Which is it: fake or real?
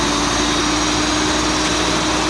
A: real